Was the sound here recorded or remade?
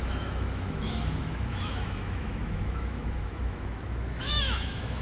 remade